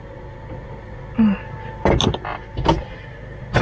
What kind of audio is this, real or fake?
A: real